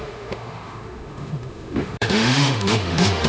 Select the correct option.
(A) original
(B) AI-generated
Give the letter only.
B